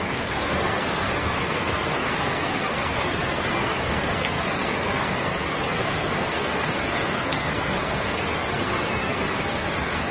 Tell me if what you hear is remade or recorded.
remade